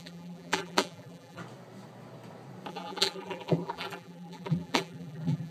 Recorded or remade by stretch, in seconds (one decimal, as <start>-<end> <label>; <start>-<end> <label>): 0.0-1.4 remade; 1.4-2.7 recorded; 2.7-5.5 remade